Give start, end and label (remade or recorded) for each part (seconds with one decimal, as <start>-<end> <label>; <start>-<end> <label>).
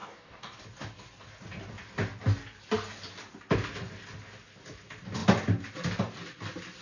0.0-0.6 remade; 0.6-6.8 recorded